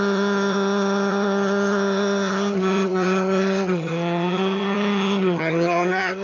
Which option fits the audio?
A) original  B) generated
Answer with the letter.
B